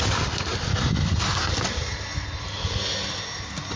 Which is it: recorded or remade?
recorded